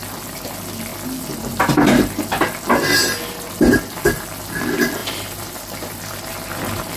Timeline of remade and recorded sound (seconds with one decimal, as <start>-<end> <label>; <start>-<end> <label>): 0.0-5.0 recorded; 5.0-6.3 remade; 6.3-7.0 recorded